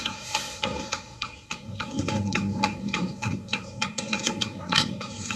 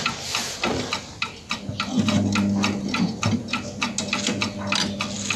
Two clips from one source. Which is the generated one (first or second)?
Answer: first